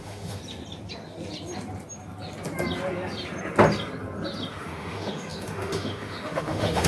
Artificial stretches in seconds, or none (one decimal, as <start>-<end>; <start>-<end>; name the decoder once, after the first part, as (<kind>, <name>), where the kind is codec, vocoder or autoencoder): 0.0-0.4 (autoencoder, DAC-VAE); 4.5-6.9